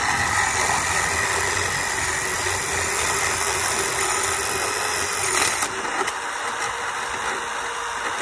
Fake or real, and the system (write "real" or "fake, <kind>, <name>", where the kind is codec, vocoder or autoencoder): real